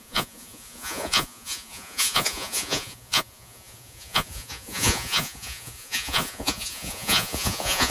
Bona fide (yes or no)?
no